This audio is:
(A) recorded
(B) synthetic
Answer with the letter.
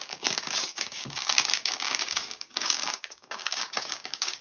B